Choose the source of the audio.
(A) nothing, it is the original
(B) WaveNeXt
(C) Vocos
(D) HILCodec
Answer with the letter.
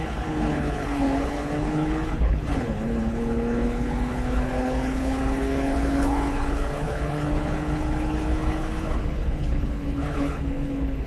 D